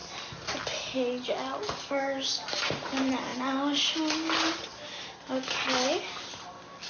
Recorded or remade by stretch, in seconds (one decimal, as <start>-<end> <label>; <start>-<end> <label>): 0.0-6.9 recorded